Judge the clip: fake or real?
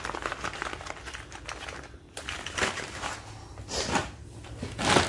real